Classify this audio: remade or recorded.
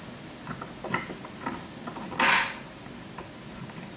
recorded